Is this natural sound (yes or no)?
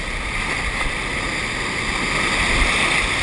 yes